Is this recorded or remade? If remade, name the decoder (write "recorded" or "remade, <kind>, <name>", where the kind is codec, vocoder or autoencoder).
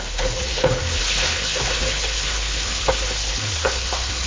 remade, codec, HILCodec